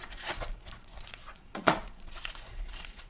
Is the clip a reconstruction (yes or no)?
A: yes